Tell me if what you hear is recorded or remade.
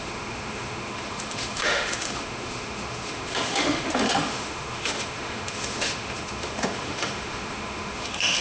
remade